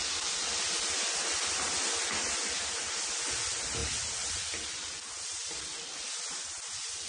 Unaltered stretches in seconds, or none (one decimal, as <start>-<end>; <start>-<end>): 0.0-3.8; 4.4-7.1